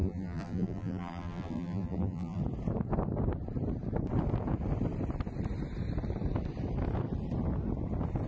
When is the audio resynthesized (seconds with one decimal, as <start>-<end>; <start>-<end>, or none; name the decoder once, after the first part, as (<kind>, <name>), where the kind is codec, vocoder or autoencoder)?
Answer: 0.0-2.4 (vocoder, BigVGAN v2)